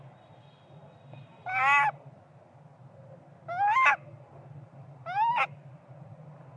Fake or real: real